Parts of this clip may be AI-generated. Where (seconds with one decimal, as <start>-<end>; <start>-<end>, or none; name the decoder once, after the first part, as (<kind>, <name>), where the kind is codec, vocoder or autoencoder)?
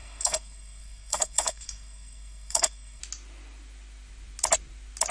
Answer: 0.0-3.0 (codec, SNAC)